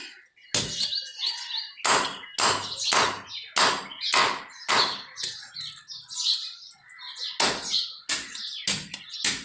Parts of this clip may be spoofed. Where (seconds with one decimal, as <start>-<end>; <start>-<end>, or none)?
none